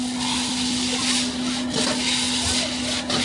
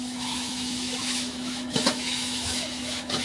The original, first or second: first